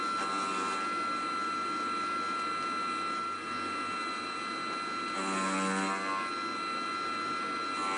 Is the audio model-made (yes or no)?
no